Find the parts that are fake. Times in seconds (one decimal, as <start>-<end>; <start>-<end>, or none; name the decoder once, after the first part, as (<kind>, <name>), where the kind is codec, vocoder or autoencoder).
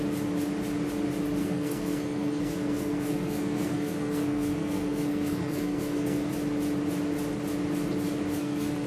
1.4-6.3 (codec, SNAC); 8.3-8.9